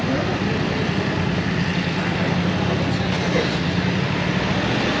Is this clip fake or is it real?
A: real